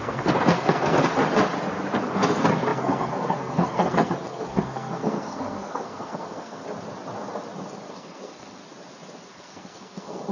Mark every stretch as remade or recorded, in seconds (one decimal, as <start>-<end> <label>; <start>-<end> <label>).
0.0-1.1 remade; 1.1-2.1 recorded; 2.1-6.6 remade; 6.6-7.9 recorded; 7.9-8.6 remade; 8.6-9.3 recorded; 9.3-10.3 remade